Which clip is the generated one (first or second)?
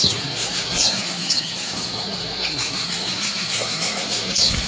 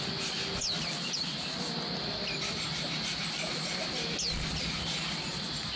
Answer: first